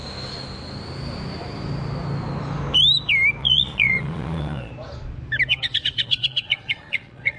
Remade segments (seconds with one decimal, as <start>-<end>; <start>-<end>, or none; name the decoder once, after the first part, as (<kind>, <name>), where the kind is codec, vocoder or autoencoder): 3.4-4.7 (vocoder, Vocos); 5.5-7.4